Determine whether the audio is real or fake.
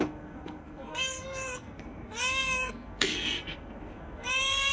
fake